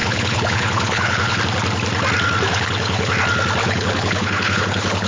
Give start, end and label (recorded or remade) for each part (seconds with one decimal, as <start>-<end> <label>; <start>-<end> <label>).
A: 0.0-1.4 remade; 1.4-2.5 recorded; 2.5-3.1 remade; 3.1-3.6 recorded; 3.6-5.1 remade